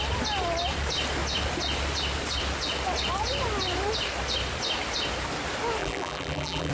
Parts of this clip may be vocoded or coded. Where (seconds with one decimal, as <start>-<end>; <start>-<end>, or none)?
5.8-6.7